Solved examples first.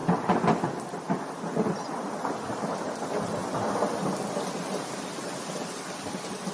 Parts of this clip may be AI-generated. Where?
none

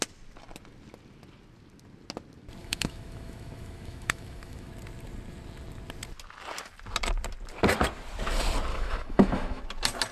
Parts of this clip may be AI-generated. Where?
2.6-4.7 (autoencoder, DAC-VAE); 8.7-9.6

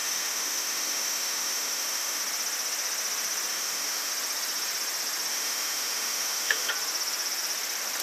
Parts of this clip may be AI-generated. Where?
0.0-2.2 (autoencoder, DAC-VAE); 3.5-4.1; 5.3-6.7

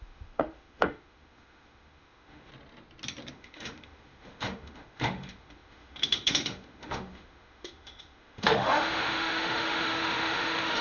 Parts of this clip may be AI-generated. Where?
0.0-2.5 (autoencoder, DAC-VAE); 3.3-10.8

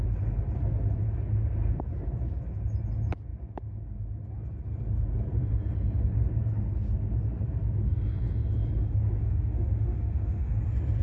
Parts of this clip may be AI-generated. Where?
9.2-10.6 (autoencoder, DAC-VAE)

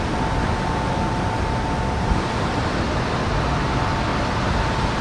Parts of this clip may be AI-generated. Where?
none

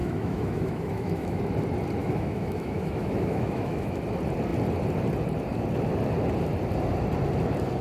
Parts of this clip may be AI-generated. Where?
0.0-1.4 (autoencoder, DAC-VAE); 2.0-4.0